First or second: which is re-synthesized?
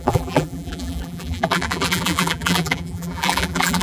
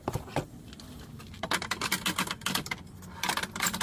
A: first